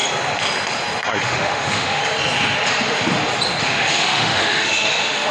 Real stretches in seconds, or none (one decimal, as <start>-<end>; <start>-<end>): 0.0-1.2; 2.0-3.6